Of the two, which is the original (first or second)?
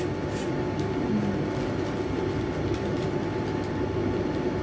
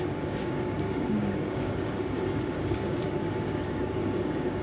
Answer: first